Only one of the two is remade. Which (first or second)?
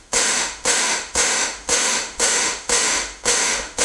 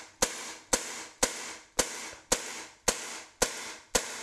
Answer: first